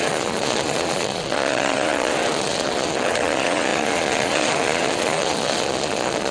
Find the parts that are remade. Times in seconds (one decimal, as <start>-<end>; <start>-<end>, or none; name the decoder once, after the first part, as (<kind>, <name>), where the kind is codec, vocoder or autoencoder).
0.0-6.3 (vocoder, Vocos)